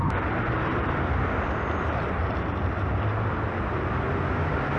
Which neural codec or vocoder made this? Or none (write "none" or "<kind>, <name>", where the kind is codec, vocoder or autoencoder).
none